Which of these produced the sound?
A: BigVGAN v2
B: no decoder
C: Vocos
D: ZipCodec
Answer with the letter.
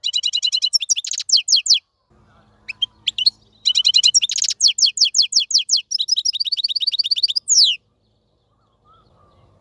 B